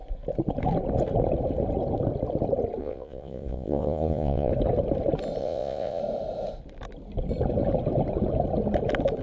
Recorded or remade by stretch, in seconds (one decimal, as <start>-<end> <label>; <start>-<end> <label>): 0.0-2.8 recorded; 2.8-4.5 remade; 4.5-5.4 recorded; 5.4-6.0 remade; 6.0-9.2 recorded